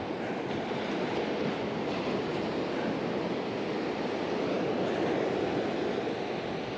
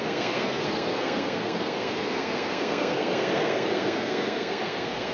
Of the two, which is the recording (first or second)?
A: first